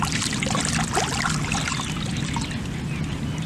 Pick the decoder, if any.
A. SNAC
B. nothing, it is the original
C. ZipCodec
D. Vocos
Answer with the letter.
B